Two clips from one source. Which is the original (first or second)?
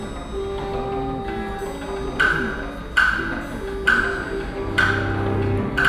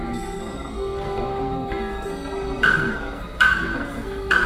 first